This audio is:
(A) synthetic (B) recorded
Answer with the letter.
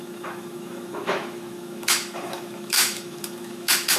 A